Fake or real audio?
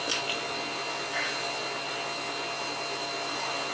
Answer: real